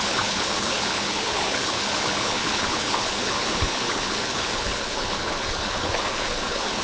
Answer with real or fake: fake